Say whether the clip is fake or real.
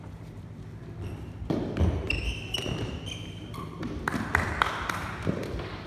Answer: fake